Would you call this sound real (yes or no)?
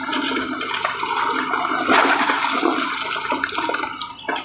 yes